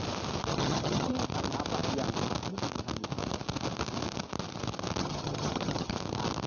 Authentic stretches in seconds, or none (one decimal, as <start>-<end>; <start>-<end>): 0.0-0.5; 1.1-5.0; 5.9-6.5